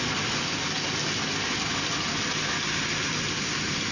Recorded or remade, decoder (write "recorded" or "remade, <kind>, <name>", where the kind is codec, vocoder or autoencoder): recorded